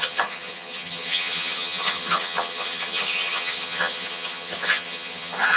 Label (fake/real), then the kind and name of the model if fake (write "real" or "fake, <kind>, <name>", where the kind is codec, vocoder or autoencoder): fake, vocoder, HiFi-GAN